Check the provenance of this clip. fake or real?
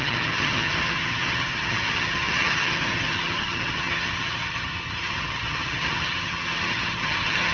fake